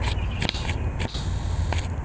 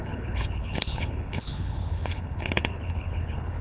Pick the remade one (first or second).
second